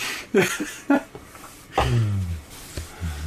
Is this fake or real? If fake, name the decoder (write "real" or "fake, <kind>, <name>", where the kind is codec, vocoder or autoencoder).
real